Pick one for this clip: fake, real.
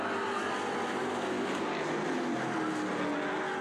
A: real